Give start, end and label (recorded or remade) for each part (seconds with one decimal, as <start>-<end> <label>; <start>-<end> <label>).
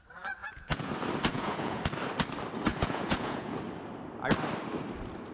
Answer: 0.0-0.4 recorded; 0.4-0.9 remade; 0.9-1.3 recorded; 1.3-1.8 remade; 1.8-2.7 recorded; 2.7-3.6 remade; 3.6-5.3 recorded